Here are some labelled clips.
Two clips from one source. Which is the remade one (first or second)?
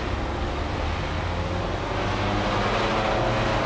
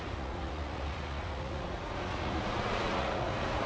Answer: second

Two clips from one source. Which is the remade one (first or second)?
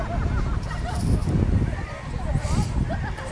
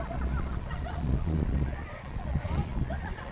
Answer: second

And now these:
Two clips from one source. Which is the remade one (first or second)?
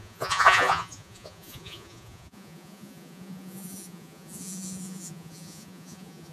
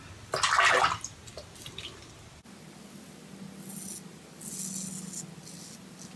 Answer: first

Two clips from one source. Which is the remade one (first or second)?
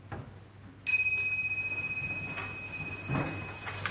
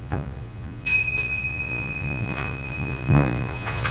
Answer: second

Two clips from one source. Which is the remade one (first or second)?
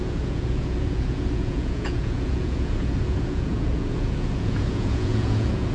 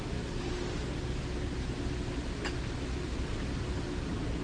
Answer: first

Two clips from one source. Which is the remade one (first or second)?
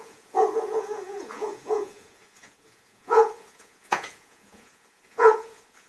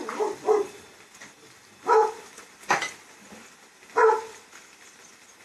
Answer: first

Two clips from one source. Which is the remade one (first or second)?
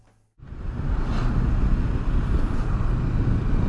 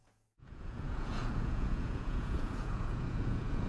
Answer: second